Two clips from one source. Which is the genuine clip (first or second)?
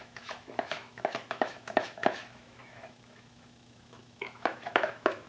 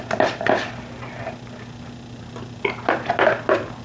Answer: second